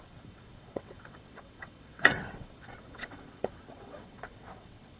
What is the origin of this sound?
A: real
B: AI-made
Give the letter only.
B